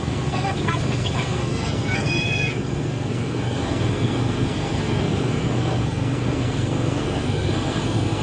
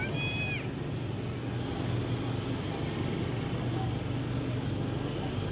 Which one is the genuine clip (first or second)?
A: second